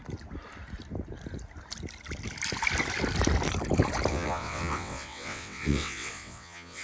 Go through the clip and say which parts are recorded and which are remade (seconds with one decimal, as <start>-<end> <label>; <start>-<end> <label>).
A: 0.0-4.1 recorded; 4.1-6.8 remade